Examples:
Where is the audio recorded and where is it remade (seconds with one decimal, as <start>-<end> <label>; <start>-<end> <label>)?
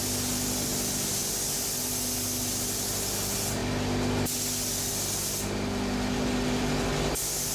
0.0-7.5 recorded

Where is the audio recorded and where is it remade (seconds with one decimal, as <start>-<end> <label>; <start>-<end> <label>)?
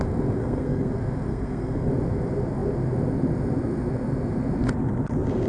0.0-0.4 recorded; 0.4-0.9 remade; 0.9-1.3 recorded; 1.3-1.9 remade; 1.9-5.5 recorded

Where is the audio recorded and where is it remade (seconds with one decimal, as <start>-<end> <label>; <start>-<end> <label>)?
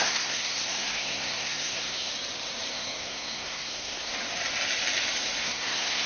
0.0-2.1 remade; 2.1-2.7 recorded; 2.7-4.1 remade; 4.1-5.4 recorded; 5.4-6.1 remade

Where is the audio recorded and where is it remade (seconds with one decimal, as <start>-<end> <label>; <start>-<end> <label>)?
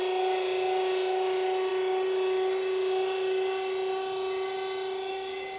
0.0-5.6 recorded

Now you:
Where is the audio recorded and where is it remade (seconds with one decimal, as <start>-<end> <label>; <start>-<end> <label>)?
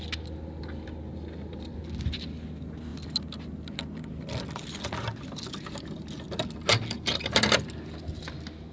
0.0-8.7 recorded